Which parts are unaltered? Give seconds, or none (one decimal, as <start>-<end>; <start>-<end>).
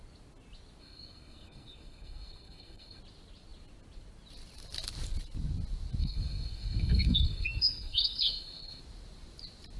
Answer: 0.0-0.8; 3.0-6.0; 8.8-9.8